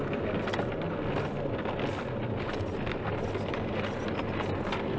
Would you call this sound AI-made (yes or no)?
no